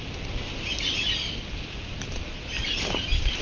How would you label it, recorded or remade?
recorded